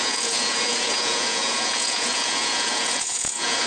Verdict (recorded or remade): remade